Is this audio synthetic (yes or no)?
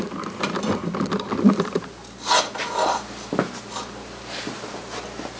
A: no